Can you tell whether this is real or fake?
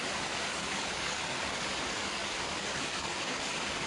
fake